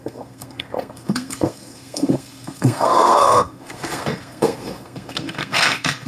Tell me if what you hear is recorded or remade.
remade